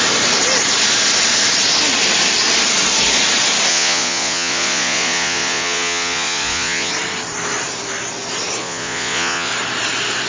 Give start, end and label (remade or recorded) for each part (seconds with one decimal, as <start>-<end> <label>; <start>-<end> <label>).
0.0-3.7 recorded; 3.7-6.9 remade; 6.9-8.6 recorded; 8.6-9.5 remade; 9.5-10.3 recorded